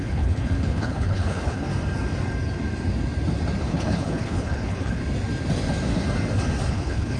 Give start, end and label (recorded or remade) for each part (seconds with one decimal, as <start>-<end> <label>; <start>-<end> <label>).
0.0-1.7 remade; 1.7-3.7 recorded; 3.7-5.0 remade; 5.0-6.7 recorded; 6.7-7.2 remade